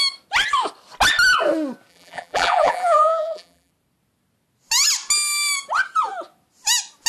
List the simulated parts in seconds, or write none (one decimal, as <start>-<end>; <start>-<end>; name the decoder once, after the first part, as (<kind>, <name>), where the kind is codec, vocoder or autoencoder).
1.9-3.7 (vocoder, BigVGAN v2)